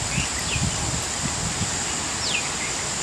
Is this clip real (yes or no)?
yes